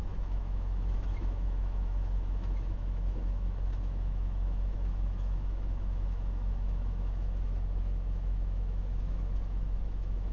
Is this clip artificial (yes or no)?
yes